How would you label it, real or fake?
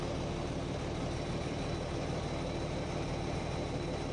fake